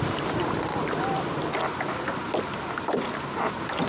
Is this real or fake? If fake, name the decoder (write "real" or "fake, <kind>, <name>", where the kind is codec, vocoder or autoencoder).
fake, vocoder, BigVGAN v2